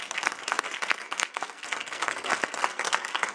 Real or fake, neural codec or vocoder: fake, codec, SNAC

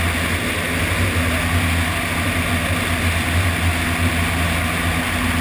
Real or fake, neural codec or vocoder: real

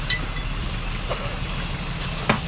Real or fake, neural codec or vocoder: real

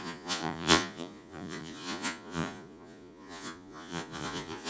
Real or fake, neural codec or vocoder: fake, vocoder, Vocos